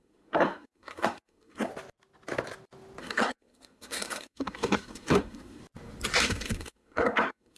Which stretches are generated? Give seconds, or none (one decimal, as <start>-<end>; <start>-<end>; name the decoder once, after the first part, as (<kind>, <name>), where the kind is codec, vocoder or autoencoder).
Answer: 0.0-1.7 (codec, SNAC); 3.0-5.6; 6.2-7.6

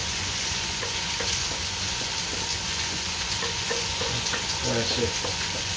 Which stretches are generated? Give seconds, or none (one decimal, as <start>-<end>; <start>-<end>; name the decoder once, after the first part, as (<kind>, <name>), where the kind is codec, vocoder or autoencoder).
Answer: 0.0-2.1 (vocoder, Vocos); 2.5-5.8

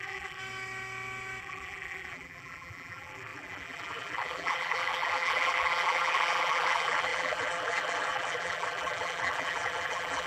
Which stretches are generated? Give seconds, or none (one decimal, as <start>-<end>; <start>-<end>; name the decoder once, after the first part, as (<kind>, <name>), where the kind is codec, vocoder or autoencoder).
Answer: 0.0-0.4 (vocoder, BigVGAN v2); 1.4-10.3

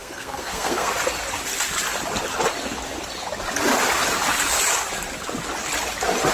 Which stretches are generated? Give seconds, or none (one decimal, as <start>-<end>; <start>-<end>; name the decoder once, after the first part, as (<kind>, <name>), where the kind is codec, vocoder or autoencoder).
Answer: 0.0-0.9 (codec, SNAC)

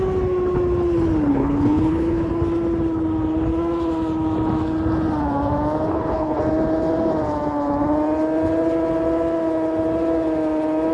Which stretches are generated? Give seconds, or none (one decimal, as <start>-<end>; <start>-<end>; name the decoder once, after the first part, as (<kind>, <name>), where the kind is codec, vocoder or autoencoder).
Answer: 1.3-2.3 (codec, HILCodec); 5.9-6.4

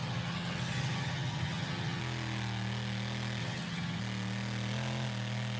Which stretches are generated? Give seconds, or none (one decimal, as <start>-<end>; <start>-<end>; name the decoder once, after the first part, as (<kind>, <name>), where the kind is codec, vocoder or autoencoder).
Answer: 0.0-2.0 (vocoder, HiFi-GAN); 3.4-4.0

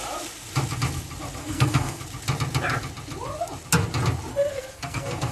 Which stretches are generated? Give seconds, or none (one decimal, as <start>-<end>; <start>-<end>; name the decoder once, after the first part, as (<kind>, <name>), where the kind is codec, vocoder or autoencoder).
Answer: 1.4-2.0 (codec, SNAC); 4.3-5.3

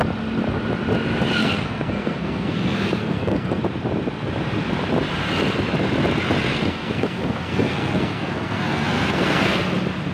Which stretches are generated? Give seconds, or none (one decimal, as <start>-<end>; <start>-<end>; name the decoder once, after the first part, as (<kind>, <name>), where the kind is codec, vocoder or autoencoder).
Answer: 1.4-3.6 (codec, SNAC); 6.5-9.6